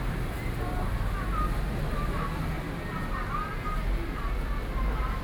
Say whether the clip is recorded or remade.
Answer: recorded